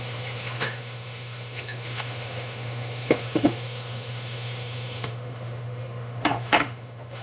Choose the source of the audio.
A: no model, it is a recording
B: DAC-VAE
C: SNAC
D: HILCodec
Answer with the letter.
B